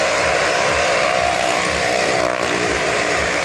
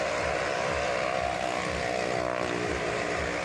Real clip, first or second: second